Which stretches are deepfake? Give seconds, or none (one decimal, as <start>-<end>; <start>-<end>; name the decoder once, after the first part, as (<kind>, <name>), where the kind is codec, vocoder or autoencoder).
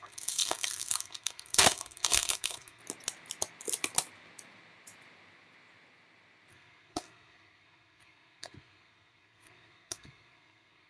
0.0-2.8 (codec, SNAC); 6.5-10.9